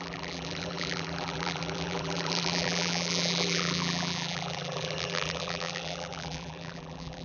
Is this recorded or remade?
remade